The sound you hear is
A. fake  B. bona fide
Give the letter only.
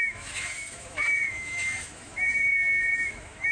A